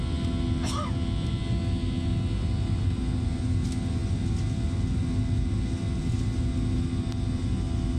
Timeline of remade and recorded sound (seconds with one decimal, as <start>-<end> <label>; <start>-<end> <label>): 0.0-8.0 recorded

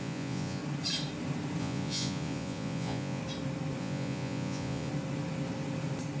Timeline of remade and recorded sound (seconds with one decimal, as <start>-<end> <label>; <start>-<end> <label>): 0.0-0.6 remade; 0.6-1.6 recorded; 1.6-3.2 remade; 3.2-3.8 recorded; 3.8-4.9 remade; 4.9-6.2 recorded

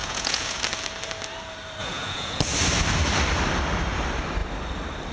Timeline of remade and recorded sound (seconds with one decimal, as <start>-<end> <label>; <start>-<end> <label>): 0.0-0.6 remade; 0.6-1.8 recorded; 1.8-2.4 remade; 2.4-5.1 recorded

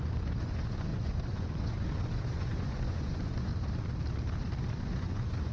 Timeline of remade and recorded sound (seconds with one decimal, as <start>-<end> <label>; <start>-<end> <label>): 0.0-3.5 remade; 3.5-4.8 recorded; 4.8-5.5 remade

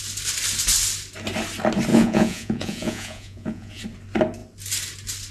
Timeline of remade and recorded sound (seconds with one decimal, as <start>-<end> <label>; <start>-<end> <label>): 0.0-1.9 recorded; 1.9-3.8 remade; 3.8-5.3 recorded

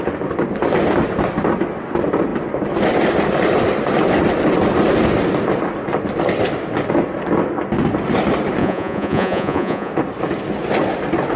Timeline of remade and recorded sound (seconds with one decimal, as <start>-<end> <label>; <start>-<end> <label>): 0.0-8.6 recorded; 8.6-9.9 remade; 9.9-11.4 recorded